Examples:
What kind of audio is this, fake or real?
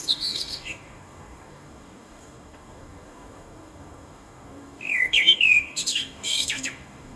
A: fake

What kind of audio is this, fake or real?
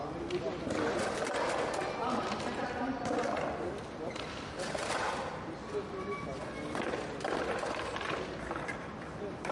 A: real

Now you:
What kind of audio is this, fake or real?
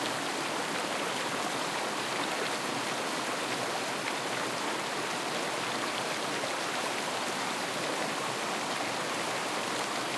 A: real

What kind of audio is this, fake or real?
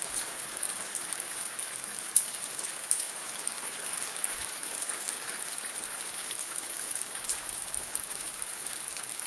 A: fake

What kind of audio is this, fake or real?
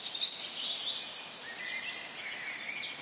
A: real